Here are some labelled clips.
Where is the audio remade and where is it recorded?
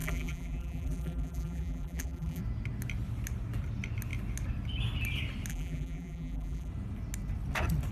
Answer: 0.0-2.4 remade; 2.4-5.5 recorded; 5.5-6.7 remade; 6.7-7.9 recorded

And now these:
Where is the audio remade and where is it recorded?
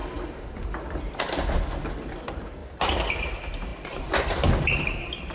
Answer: 0.0-2.6 remade; 2.6-3.1 recorded; 3.1-5.3 remade